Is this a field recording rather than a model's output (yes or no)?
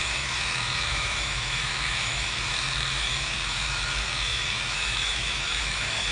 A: no